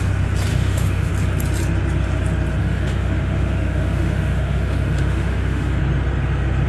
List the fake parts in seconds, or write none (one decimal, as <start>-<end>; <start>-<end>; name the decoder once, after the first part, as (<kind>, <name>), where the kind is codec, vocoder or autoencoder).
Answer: 0.5-1.1 (autoencoder, DAC-VAE); 2.6-5.8